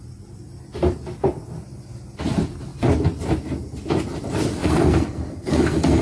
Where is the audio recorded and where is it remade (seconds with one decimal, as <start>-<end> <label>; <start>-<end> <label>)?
0.0-4.6 recorded; 4.6-6.0 remade